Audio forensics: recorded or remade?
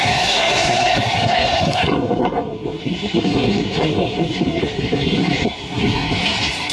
remade